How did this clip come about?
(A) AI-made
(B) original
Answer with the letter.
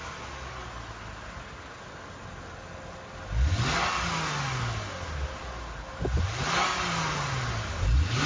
B